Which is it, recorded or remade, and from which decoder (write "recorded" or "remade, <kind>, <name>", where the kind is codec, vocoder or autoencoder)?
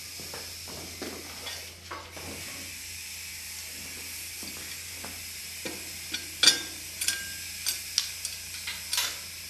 recorded